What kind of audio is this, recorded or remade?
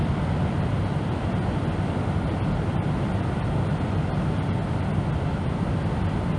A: recorded